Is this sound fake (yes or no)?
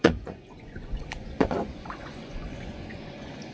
yes